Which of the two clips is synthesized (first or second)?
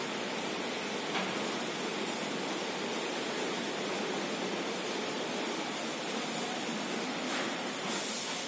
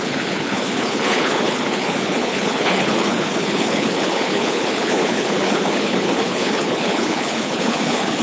second